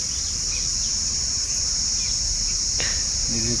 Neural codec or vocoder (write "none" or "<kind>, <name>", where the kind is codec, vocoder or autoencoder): none